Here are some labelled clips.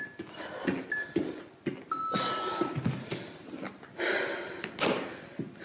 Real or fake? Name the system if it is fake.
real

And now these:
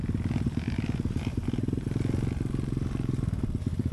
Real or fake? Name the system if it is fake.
real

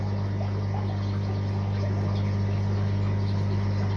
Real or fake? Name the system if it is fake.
real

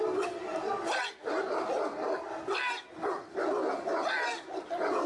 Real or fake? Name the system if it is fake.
real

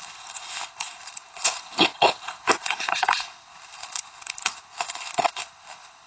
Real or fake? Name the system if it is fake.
fake, codec, HILCodec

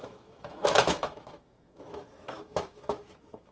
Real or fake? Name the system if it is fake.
fake, autoencoder, DAC-VAE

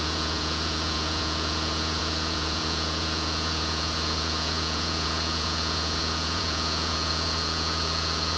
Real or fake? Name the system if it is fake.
fake, vocoder, Vocos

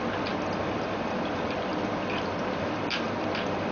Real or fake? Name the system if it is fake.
real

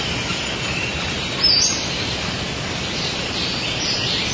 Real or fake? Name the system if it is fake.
real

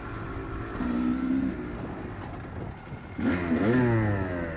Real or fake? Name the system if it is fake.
real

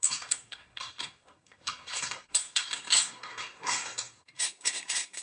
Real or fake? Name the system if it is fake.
fake, codec, SNAC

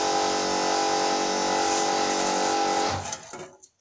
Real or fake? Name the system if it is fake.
real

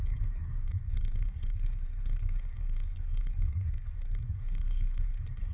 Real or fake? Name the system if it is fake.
fake, codec, SNAC